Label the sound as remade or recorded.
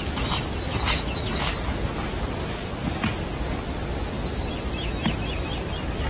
recorded